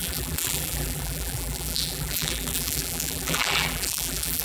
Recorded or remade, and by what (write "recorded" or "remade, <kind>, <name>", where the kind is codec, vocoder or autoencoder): remade, vocoder, BigVGAN v2